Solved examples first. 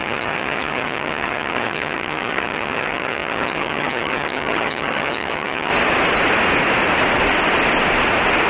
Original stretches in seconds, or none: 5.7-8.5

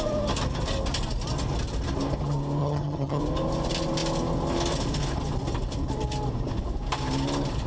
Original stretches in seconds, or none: 0.0-2.6; 3.2-7.7